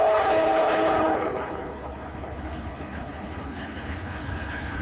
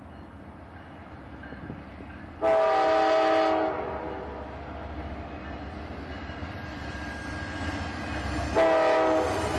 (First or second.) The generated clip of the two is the first